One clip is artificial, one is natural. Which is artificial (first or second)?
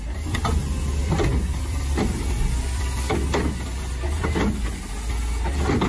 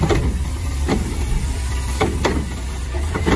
second